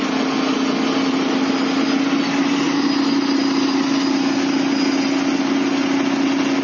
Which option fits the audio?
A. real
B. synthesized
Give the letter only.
A